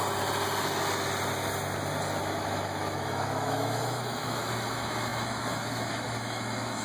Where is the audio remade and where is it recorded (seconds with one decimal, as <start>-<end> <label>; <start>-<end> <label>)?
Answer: 0.0-2.2 recorded; 2.2-6.8 remade